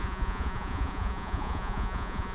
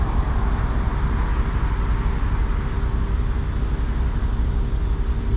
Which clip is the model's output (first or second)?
first